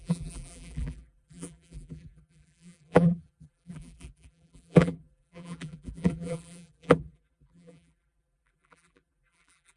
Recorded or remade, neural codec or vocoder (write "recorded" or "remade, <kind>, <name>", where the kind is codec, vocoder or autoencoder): remade, vocoder, BigVGAN v2